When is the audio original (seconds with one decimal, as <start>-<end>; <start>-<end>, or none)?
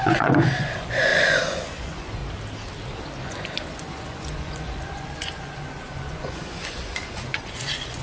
2.2-3.2